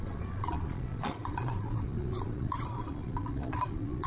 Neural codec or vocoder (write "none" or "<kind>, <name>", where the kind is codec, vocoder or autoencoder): vocoder, Vocos